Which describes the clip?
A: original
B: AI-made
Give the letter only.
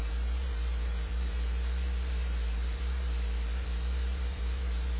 B